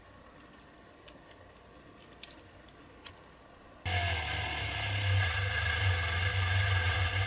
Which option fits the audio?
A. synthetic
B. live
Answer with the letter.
B